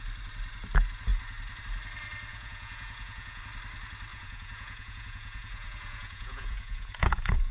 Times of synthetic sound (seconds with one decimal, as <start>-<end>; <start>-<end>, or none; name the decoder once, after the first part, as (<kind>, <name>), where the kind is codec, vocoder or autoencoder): 2.3-3.4 (vocoder, Vocos); 4.1-7.5